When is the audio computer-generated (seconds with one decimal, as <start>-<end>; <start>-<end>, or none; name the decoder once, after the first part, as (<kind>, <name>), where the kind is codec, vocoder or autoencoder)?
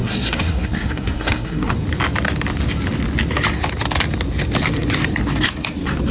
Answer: 0.0-1.7 (codec, SNAC)